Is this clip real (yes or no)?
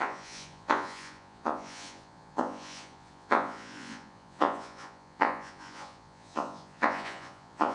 no